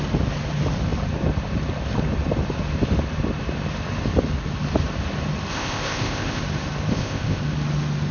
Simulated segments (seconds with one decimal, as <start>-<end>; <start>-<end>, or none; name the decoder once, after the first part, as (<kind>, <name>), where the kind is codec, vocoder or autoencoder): 5.5-6.4 (codec, ZipCodec); 6.9-7.4